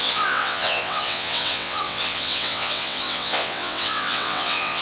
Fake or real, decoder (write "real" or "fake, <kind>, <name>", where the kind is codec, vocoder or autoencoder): fake, vocoder, WaveNeXt